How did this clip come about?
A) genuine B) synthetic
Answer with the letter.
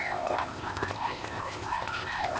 B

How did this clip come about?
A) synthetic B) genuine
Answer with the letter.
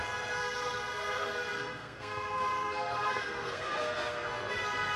A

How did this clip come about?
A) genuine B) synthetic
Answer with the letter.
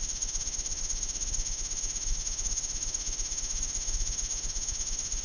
B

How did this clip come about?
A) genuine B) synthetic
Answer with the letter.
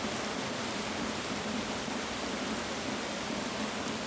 A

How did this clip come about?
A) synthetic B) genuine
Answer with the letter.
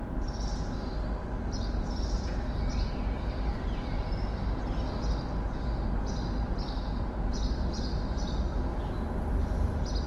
B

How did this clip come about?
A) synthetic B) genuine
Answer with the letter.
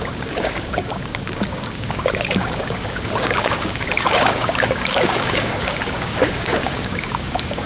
A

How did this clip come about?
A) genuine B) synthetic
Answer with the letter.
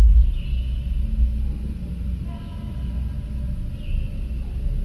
A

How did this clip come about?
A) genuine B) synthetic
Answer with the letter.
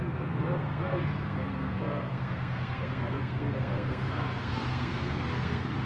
B